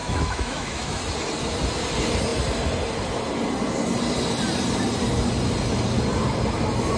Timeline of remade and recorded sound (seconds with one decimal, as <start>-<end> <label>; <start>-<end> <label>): 0.0-1.0 remade; 1.0-7.0 recorded